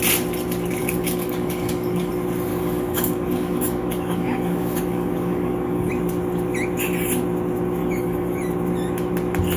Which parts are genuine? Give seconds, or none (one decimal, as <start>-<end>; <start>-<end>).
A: 0.0-0.8; 2.1-2.5; 5.9-7.8; 8.4-9.6